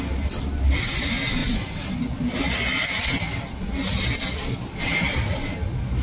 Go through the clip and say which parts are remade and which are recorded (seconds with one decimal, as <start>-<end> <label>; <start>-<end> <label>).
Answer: 0.0-6.0 recorded